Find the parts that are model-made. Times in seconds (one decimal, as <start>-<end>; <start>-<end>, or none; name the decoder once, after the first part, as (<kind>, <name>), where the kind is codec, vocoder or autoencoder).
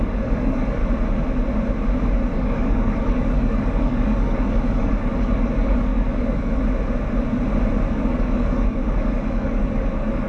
0.0-0.8 (codec, DAC); 2.3-6.6; 7.9-10.3